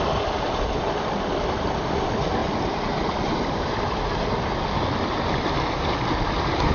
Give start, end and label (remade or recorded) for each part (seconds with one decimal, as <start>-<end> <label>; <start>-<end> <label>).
0.0-2.4 recorded; 2.4-3.4 remade; 3.4-6.7 recorded

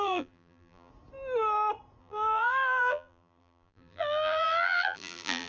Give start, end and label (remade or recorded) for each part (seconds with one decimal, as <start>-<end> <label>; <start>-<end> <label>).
0.0-0.9 remade; 0.9-2.0 recorded; 2.0-5.5 remade

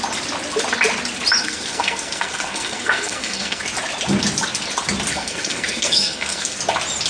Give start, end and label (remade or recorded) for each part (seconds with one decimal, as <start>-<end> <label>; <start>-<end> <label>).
0.0-1.4 recorded; 1.4-3.6 remade; 3.6-5.1 recorded; 5.1-6.6 remade; 6.6-7.1 recorded

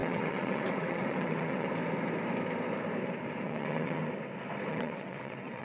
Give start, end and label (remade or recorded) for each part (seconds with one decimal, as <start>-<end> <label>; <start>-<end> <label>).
0.0-1.7 remade; 1.7-3.4 recorded; 3.4-4.0 remade; 4.0-4.7 recorded; 4.7-5.6 remade

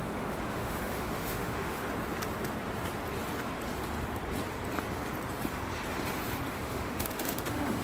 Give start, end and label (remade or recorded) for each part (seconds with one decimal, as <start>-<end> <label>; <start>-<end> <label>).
0.0-1.8 remade; 1.8-6.5 recorded; 6.5-7.8 remade

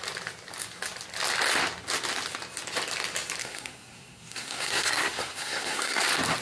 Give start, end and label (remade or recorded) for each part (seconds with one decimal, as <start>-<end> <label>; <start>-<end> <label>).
0.0-3.4 recorded; 3.4-6.0 remade; 6.0-6.4 recorded

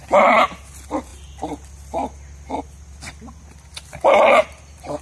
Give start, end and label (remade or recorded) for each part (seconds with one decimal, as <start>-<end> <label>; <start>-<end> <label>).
0.0-5.0 recorded

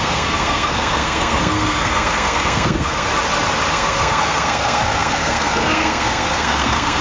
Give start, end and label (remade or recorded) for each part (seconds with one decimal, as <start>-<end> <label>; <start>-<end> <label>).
0.0-3.1 remade; 3.1-3.7 recorded; 3.7-7.0 remade